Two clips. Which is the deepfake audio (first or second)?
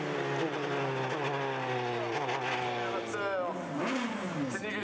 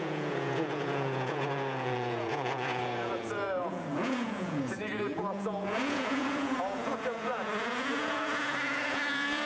second